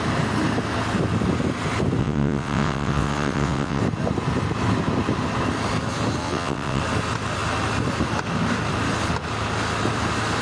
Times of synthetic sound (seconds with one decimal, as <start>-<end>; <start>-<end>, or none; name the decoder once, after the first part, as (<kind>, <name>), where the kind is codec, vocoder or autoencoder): 2.0-3.8 (vocoder, WaveNeXt); 6.2-6.8